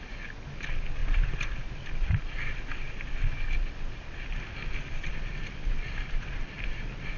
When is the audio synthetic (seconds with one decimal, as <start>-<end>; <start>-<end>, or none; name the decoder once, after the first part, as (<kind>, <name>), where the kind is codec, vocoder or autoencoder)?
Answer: none